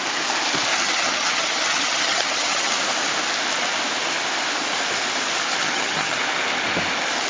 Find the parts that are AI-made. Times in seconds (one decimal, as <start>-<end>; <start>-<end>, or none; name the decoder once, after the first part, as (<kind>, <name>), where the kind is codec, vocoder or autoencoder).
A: 0.7-2.7 (vocoder, HiFi-GAN); 5.6-6.2